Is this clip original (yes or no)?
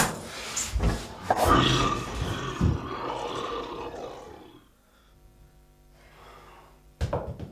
yes